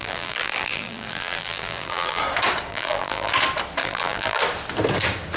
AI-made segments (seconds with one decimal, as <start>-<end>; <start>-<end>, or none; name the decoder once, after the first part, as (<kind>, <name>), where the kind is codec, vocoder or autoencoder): 0.0-2.2 (vocoder, BigVGAN v2); 2.7-3.3; 3.8-4.4